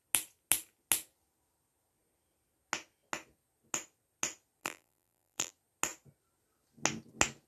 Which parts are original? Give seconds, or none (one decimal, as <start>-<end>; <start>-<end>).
0.0-4.6; 5.5-7.5